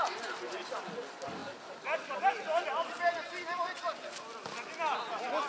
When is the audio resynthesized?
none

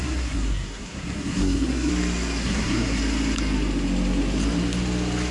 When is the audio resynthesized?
0.0-1.9; 2.4-3.0

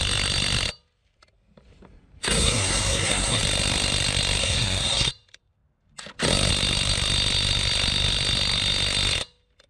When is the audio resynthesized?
2.2-3.4; 4.4-5.1

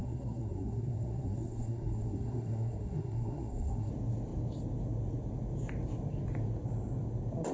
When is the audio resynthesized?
0.0-3.9

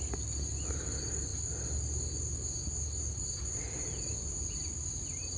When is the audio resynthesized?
none